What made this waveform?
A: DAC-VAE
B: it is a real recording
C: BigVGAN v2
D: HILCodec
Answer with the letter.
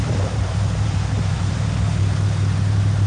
C